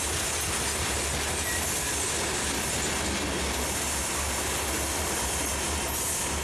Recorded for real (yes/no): yes